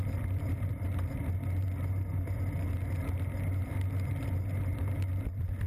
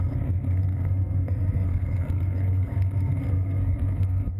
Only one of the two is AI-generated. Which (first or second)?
second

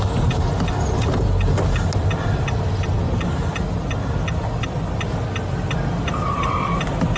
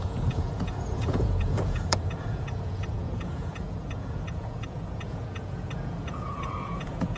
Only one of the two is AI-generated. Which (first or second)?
second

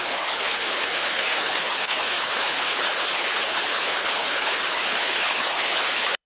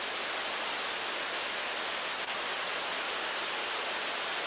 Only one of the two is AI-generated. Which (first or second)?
first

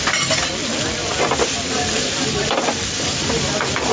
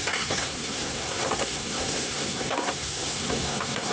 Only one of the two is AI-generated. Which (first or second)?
second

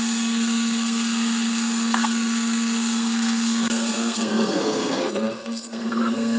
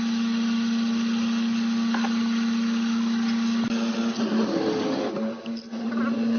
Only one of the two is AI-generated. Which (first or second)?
first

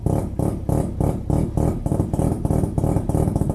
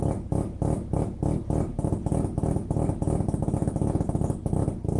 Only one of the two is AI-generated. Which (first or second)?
first